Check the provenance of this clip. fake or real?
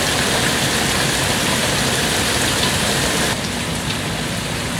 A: real